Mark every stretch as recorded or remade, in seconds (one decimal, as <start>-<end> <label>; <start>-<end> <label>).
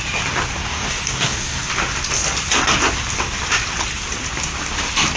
0.0-0.6 recorded; 0.6-1.7 remade; 1.7-5.2 recorded